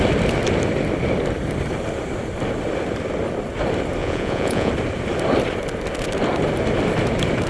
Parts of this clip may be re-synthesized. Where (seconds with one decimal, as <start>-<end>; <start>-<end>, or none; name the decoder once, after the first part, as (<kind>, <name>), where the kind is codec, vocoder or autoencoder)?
4.0-4.7 (vocoder, Vocos)